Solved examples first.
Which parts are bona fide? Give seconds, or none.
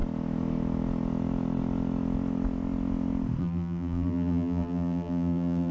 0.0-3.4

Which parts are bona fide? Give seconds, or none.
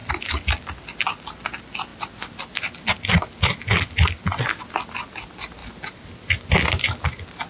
0.0-7.5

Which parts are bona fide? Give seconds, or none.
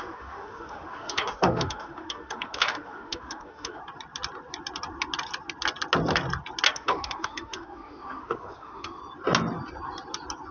3.8-6.7; 9.0-10.5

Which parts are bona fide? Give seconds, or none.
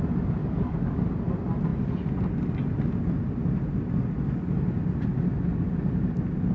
0.0-0.4; 1.0-6.5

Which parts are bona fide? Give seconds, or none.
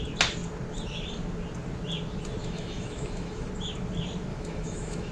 0.0-2.4; 3.5-4.3